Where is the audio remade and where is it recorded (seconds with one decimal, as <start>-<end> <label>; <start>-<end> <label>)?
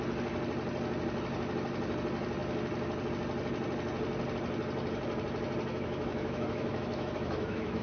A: 0.0-5.7 recorded; 5.7-7.8 remade